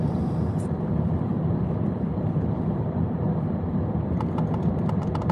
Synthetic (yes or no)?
no